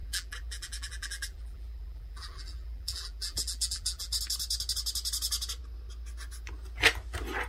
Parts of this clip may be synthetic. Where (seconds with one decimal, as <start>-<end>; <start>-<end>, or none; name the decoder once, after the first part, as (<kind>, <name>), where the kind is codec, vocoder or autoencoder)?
0.0-4.2 (vocoder, BigVGAN v2)